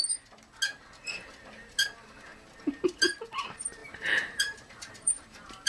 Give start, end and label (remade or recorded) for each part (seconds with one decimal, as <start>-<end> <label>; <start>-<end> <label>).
0.0-3.8 recorded; 3.8-5.7 remade